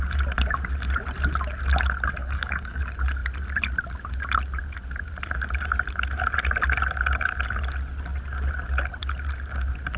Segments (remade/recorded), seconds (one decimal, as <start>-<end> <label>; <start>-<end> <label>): 0.0-2.2 recorded; 2.2-2.8 remade; 2.8-10.0 recorded